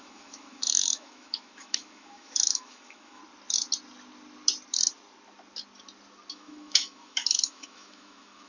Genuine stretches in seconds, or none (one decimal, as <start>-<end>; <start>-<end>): 3.2-6.3